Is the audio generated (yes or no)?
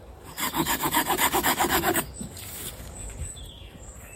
yes